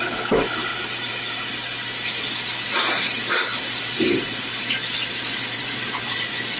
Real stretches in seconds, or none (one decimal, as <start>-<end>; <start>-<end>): 0.0-6.6